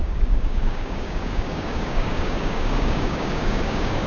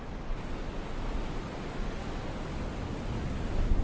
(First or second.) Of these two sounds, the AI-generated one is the first